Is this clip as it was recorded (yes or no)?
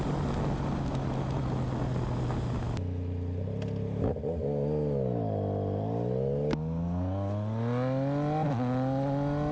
yes